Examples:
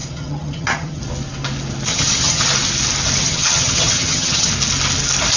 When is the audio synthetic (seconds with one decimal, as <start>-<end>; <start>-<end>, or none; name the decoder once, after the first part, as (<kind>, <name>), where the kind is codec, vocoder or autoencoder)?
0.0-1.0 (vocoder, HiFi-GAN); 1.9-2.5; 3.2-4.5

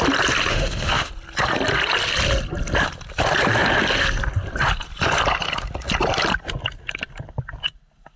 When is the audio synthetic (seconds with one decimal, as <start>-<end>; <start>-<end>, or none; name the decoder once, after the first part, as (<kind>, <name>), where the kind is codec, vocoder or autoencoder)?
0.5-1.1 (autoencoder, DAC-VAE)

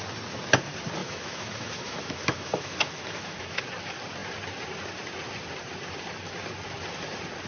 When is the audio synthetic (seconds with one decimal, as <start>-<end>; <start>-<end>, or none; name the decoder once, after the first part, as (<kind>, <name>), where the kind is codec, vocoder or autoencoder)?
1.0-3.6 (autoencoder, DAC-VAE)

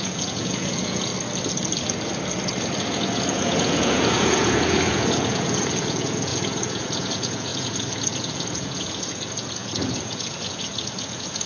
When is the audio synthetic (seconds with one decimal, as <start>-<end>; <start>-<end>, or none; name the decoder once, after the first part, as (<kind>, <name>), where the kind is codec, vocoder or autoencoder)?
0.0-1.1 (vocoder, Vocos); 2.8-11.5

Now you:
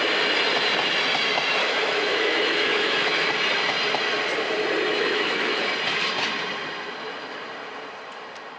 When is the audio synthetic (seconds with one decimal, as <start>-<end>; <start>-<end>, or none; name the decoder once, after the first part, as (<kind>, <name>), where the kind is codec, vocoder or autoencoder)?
1.6-3.3 (autoencoder, DAC-VAE); 4.9-5.7

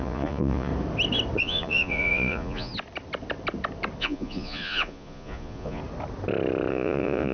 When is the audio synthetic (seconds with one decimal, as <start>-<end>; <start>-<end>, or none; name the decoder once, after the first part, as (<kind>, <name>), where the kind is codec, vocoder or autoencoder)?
0.0-0.7 (vocoder, Vocos); 1.4-2.7; 4.0-5.8; 6.7-7.3